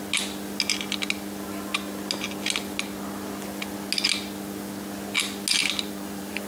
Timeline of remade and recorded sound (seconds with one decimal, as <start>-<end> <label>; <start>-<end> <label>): 0.0-5.6 recorded; 5.6-6.5 remade